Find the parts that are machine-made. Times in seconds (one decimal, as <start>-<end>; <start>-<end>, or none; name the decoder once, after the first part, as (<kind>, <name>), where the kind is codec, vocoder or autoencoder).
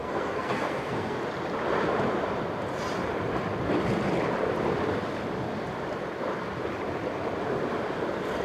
0.0-1.2 (codec, SNAC)